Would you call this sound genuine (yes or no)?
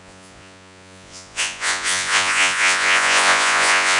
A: no